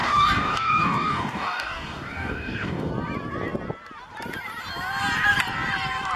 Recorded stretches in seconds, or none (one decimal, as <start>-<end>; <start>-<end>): 2.9-6.2